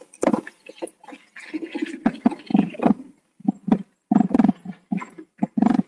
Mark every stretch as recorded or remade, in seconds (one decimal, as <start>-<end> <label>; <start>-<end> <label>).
0.0-5.9 recorded